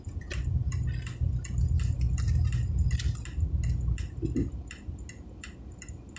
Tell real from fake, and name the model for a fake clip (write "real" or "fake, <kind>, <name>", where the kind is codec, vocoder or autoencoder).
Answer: real